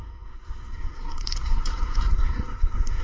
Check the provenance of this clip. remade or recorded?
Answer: remade